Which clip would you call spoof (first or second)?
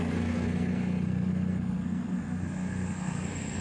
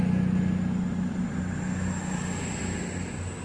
first